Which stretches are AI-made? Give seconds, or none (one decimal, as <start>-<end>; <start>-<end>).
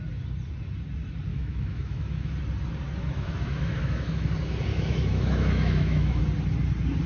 1.3-2.3; 3.0-4.3; 4.7-6.2